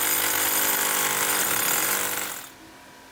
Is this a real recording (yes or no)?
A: yes